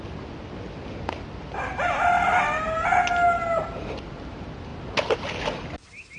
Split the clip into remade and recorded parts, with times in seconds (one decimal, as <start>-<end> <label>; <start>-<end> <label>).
0.0-6.2 recorded